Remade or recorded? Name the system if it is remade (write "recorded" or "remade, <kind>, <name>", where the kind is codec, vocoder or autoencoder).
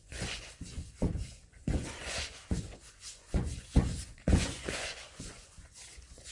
remade, vocoder, Vocos